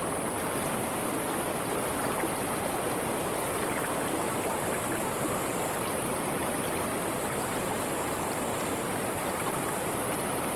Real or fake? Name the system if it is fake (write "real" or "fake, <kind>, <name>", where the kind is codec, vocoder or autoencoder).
real